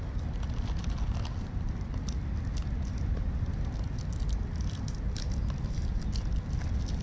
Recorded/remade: recorded